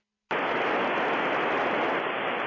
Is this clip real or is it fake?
real